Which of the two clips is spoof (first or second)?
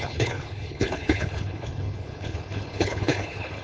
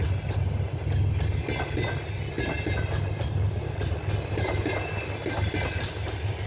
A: first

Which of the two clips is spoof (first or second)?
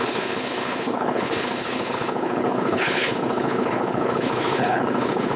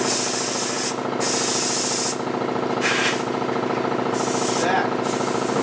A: first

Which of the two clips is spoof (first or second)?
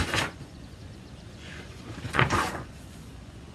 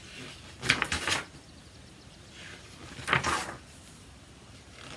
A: first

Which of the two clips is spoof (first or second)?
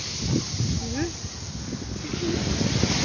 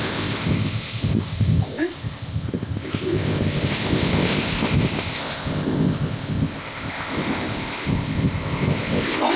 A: second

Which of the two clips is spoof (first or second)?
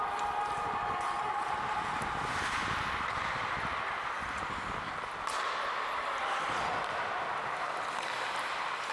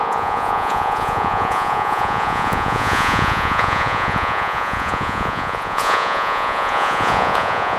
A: second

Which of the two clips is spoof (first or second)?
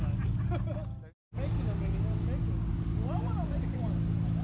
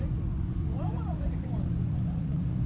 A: second